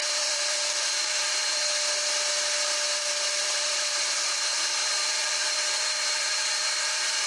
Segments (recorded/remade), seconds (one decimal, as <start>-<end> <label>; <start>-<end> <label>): 0.0-1.6 remade; 1.6-3.0 recorded; 3.0-7.3 remade